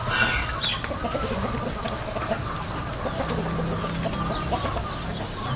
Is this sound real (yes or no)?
yes